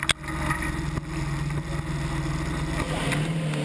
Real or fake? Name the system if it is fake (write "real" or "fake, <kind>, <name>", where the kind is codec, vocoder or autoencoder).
real